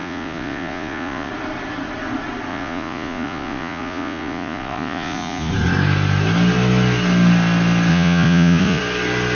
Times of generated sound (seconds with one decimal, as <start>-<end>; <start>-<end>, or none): 0.0-1.3; 2.5-5.5; 7.9-8.8

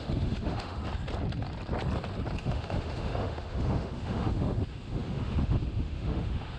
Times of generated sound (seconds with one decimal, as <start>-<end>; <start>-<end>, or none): 0.0-0.8; 2.4-6.6